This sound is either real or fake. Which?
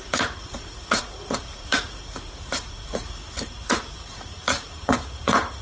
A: fake